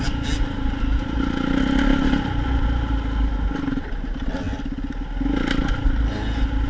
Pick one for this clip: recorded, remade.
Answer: recorded